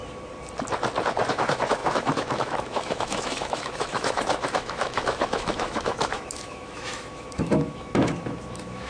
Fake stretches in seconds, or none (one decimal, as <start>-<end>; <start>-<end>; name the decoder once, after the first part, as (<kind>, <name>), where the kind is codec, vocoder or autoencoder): 1.3-8.9 (autoencoder, DAC-VAE)